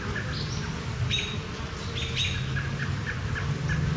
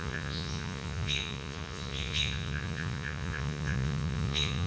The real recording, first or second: first